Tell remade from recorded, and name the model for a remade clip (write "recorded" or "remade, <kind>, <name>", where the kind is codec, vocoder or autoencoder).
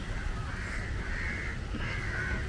recorded